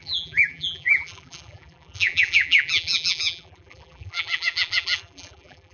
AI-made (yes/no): yes